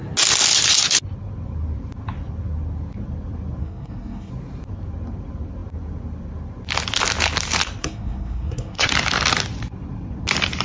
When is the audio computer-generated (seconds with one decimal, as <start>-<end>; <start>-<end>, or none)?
3.6-4.3; 7.8-8.9